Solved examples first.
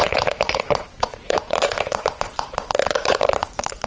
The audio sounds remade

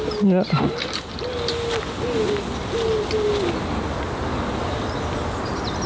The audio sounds recorded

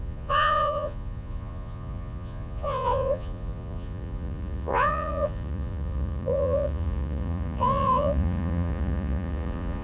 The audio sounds remade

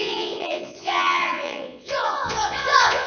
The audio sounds remade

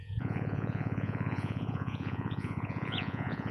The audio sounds remade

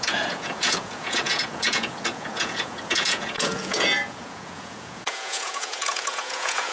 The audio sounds remade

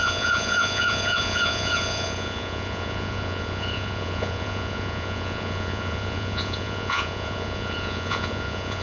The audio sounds remade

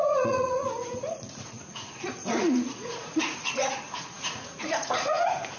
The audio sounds remade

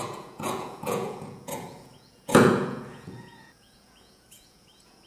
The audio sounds remade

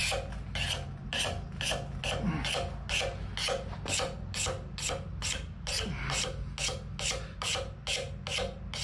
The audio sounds recorded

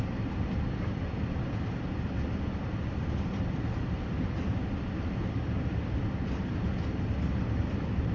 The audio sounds recorded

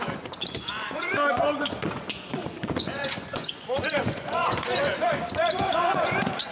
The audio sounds remade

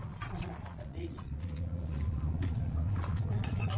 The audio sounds remade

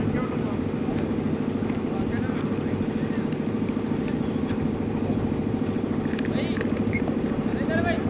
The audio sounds recorded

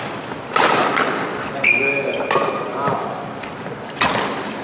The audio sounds recorded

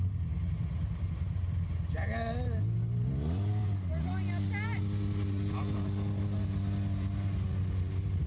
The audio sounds recorded